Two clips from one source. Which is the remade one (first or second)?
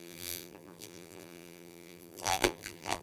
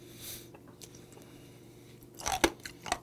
first